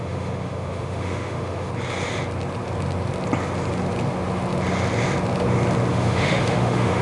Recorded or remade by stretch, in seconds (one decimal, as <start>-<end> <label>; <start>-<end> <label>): 0.0-1.7 remade; 1.7-5.9 recorded; 5.9-7.0 remade